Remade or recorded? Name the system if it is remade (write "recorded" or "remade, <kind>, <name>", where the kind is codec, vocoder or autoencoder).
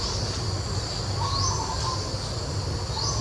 recorded